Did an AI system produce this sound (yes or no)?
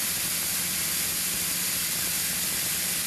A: yes